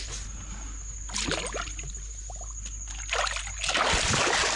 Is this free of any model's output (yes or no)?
yes